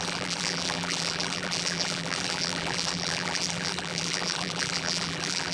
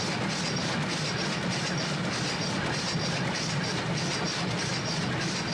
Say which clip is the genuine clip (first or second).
second